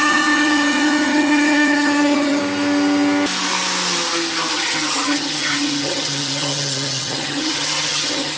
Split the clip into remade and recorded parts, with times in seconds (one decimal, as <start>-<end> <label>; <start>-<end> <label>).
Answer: 0.0-2.4 remade; 2.4-4.5 recorded; 4.5-8.4 remade